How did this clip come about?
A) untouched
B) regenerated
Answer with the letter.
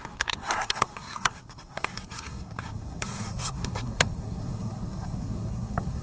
B